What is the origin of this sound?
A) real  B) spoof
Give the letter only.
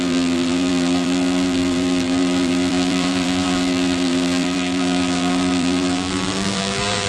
B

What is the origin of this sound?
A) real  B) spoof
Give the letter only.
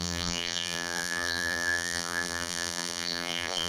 B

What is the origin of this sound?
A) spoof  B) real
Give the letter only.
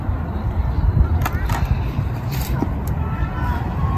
A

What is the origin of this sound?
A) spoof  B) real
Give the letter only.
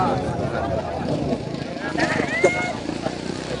B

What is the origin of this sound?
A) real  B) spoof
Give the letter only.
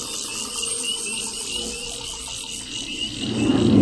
A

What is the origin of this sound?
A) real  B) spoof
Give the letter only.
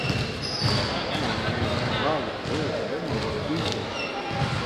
A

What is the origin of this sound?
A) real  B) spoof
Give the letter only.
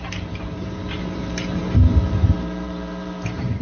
B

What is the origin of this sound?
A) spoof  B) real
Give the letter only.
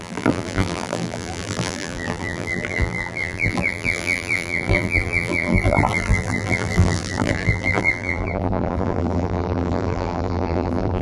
A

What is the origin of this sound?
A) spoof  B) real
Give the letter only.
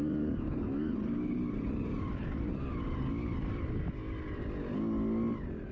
B